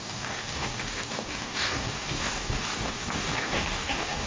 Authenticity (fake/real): fake